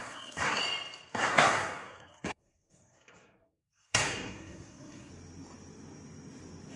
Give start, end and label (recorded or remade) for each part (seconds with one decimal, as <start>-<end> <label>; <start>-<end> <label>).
0.0-0.6 remade; 0.6-1.1 recorded; 1.1-5.1 remade; 5.1-6.8 recorded